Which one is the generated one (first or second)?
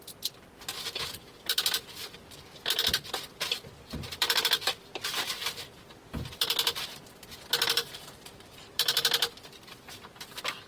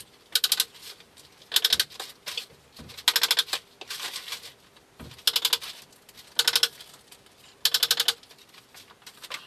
first